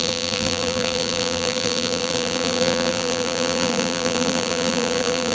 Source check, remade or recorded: remade